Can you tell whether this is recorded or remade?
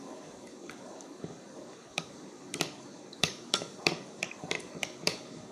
remade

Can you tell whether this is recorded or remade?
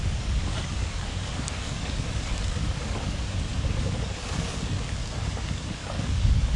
remade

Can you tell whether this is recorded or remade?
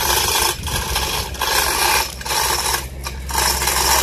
recorded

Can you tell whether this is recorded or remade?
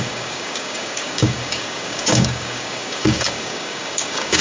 remade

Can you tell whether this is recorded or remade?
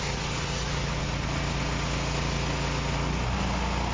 recorded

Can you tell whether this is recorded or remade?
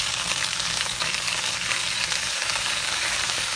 remade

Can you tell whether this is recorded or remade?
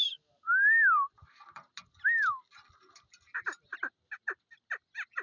recorded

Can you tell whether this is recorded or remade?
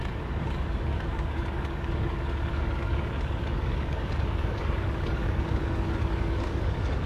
remade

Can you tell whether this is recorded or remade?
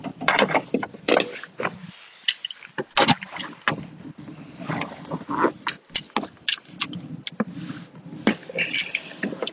recorded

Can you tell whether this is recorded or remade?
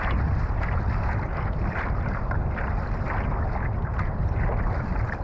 recorded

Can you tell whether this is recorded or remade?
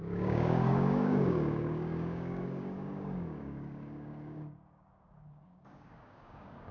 remade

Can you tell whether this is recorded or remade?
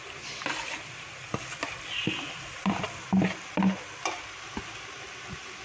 recorded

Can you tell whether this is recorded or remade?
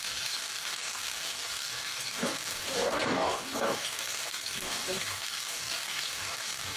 remade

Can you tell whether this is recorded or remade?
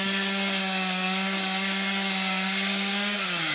remade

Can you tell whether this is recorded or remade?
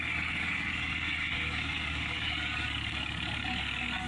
remade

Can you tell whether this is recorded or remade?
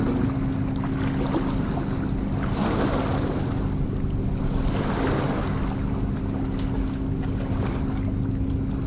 recorded